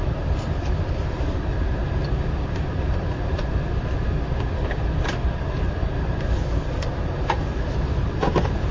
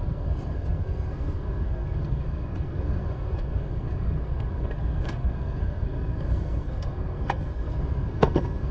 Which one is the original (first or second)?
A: first